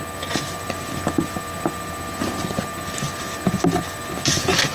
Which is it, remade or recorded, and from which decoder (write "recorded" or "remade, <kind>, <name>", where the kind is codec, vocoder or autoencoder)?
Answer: recorded